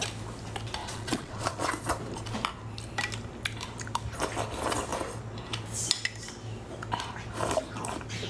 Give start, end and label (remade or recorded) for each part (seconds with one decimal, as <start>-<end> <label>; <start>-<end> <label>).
0.0-0.8 recorded; 0.8-1.7 remade; 1.7-8.3 recorded